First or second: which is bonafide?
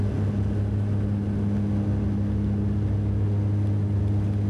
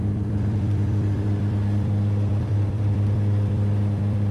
first